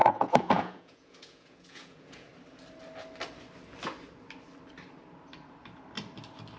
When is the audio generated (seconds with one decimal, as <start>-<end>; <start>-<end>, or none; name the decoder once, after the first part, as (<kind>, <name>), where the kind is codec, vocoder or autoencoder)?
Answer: 0.0-2.3 (vocoder, Vocos)